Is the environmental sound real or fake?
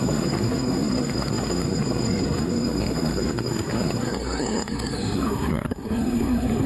fake